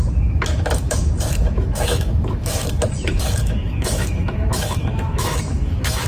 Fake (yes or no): yes